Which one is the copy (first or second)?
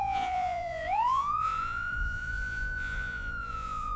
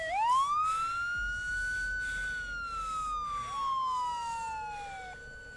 first